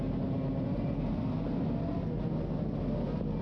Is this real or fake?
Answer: real